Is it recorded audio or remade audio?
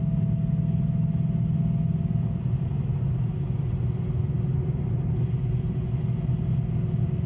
recorded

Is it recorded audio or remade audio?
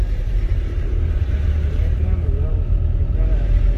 remade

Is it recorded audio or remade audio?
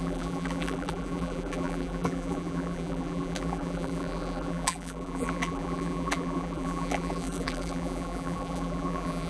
remade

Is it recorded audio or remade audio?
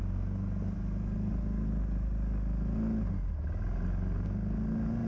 recorded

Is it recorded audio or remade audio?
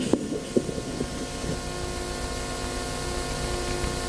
recorded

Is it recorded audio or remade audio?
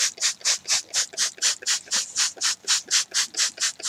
recorded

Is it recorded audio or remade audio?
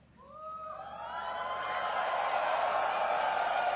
recorded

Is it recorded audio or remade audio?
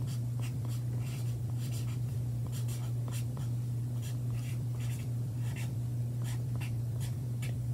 remade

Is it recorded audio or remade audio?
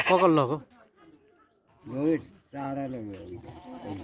recorded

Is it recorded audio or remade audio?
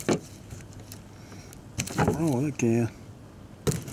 recorded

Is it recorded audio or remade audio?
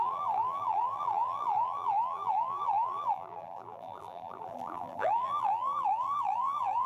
remade